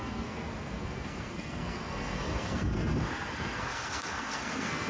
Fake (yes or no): yes